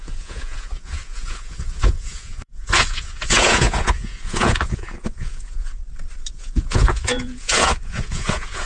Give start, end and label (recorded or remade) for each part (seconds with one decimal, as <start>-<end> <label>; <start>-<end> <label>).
0.0-5.8 remade; 5.8-6.3 recorded; 6.3-8.7 remade

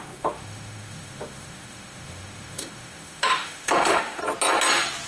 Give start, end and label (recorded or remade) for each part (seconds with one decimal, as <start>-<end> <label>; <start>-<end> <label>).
0.0-4.2 remade; 4.2-5.1 recorded

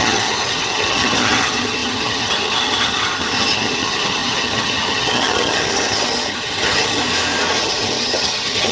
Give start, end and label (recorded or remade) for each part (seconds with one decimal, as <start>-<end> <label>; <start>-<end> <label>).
0.0-7.0 remade; 7.0-7.6 recorded; 7.6-8.7 remade

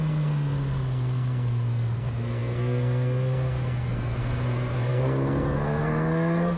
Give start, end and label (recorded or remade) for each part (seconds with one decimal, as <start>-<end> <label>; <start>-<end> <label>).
0.0-6.6 remade

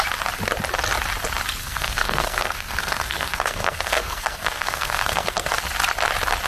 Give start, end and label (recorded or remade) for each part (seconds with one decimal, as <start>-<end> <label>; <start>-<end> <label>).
0.0-1.6 recorded; 1.6-5.5 remade; 5.5-6.5 recorded

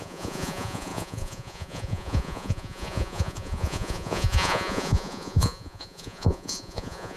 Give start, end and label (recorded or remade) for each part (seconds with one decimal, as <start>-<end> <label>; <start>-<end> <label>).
0.0-7.2 remade

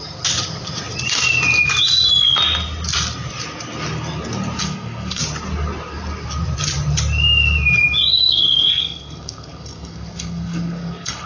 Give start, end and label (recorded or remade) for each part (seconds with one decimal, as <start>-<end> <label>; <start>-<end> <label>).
0.0-4.6 recorded; 4.6-5.2 remade; 5.2-8.1 recorded; 8.1-11.3 remade